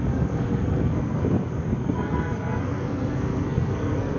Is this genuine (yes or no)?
no